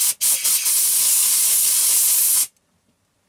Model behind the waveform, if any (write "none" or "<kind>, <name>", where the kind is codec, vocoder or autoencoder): none